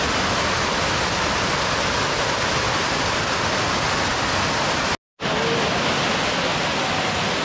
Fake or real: real